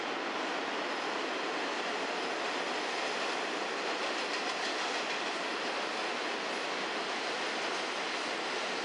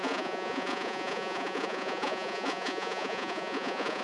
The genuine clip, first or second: first